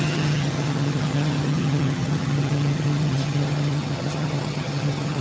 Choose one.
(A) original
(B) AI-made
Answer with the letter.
B